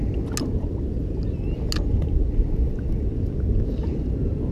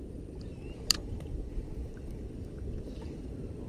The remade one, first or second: second